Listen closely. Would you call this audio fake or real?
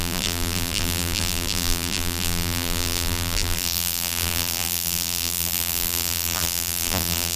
fake